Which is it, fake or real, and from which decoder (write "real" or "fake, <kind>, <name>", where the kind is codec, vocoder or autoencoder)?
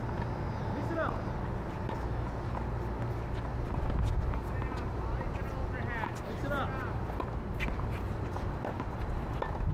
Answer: real